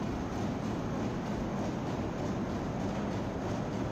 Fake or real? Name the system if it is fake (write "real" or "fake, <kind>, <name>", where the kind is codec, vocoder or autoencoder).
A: real